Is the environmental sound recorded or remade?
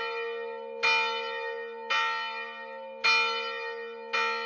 recorded